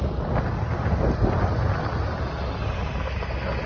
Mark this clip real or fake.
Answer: real